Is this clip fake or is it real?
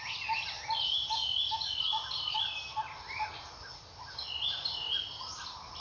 real